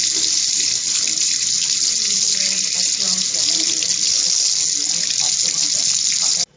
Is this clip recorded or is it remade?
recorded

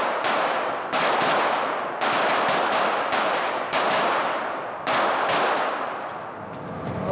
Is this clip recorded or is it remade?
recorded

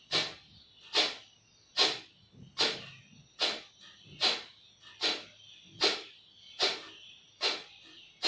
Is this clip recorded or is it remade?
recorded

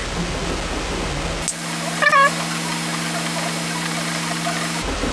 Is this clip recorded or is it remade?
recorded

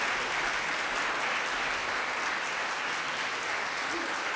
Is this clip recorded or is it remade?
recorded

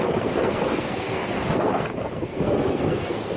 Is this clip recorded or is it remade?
remade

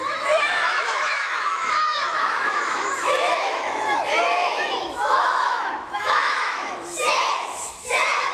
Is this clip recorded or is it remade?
remade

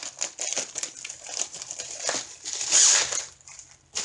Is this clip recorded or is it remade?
recorded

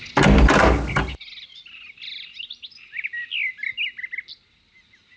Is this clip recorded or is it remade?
recorded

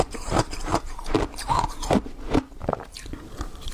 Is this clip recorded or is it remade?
remade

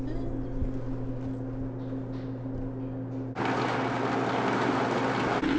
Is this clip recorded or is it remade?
recorded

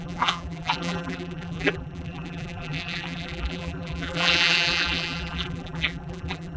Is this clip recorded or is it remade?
remade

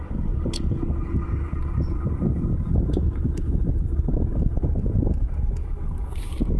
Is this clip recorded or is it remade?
recorded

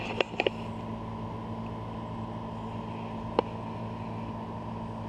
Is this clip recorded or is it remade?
recorded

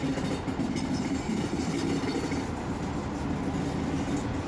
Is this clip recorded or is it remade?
recorded